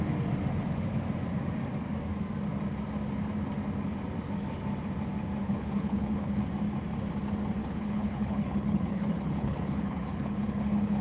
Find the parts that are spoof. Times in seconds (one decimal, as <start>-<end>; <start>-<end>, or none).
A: 5.4-6.4; 7.6-11.0